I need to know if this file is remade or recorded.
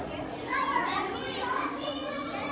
remade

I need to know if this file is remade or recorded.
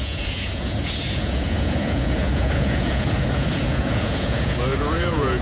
remade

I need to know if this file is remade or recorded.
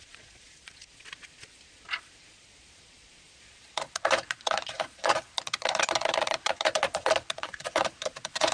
remade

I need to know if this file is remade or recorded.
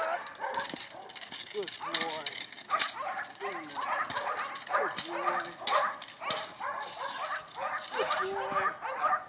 recorded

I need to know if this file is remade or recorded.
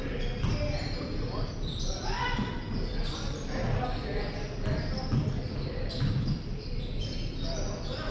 recorded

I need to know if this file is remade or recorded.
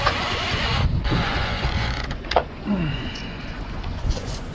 remade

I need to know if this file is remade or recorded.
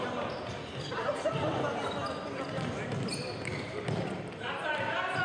recorded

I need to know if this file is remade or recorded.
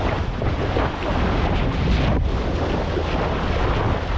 recorded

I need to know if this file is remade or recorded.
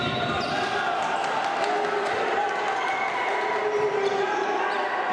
recorded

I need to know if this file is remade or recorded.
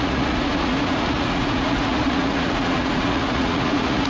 remade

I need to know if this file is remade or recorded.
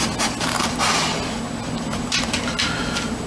recorded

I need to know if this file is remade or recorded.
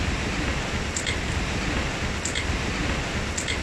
recorded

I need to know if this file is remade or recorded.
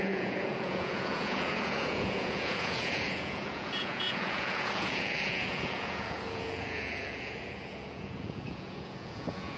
remade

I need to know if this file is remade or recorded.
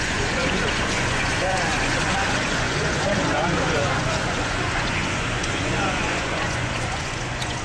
remade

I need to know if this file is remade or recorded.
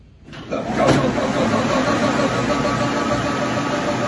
recorded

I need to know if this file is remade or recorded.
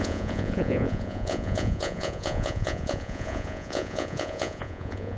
remade